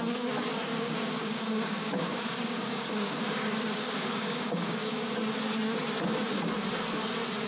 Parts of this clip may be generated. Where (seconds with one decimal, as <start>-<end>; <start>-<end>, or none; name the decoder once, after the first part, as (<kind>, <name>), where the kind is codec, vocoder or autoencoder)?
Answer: 0.7-5.2 (codec, DAC)